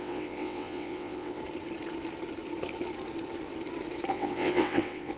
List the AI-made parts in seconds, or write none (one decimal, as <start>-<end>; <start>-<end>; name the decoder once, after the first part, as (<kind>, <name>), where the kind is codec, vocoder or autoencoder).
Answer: 0.0-1.4 (vocoder, WaveNeXt); 4.1-5.2

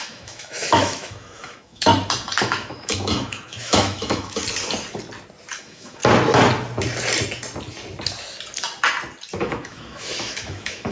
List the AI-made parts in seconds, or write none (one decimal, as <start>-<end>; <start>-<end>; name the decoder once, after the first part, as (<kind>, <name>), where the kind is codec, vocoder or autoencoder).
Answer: 0.0-1.9 (autoencoder, DAC-VAE); 2.4-4.4; 5.6-6.0; 9.4-10.9

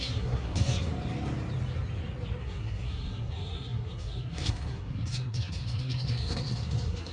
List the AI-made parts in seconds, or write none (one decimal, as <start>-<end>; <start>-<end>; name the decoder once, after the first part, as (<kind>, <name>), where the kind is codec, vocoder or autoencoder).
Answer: 0.0-0.9 (codec, SNAC); 2.4-7.1

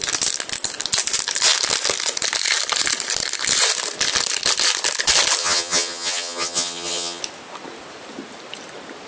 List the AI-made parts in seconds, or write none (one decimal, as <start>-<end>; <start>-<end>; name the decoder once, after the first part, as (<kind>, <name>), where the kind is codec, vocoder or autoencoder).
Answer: 5.4-7.2 (vocoder, HiFi-GAN)

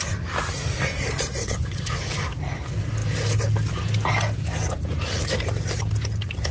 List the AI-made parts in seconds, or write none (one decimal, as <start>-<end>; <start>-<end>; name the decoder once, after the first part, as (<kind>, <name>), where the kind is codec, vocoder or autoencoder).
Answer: 1.4-1.9 (codec, HILCodec)

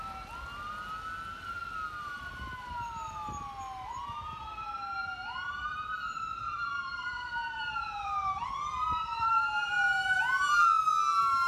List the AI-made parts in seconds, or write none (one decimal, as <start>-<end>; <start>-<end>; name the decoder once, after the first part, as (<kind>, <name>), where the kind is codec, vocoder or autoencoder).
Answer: 5.0-10.2 (vocoder, BigVGAN v2)